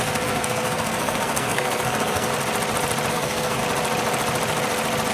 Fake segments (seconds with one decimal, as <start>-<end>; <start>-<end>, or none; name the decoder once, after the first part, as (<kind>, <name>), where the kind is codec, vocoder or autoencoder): 0.0-2.3 (codec, SNAC); 3.1-3.6